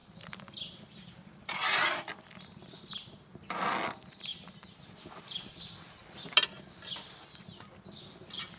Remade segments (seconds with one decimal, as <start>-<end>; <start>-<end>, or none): 0.0-2.3; 4.3-4.8